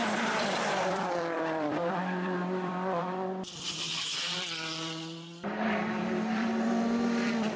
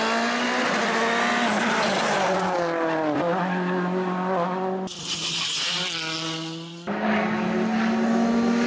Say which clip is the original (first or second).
second